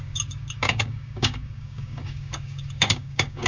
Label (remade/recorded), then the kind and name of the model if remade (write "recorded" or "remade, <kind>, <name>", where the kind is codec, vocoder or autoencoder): remade, codec, DAC